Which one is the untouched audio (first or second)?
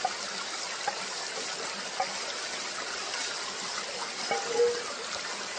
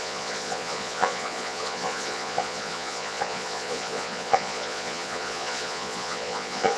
first